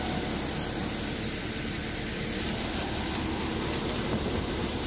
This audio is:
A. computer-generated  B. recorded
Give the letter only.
B